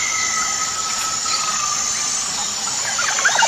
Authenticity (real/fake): real